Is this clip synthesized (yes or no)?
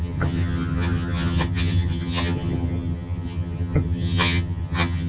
yes